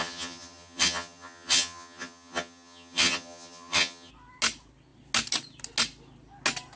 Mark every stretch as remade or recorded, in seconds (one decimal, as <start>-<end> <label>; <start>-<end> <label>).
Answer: 0.0-4.1 remade; 4.1-6.8 recorded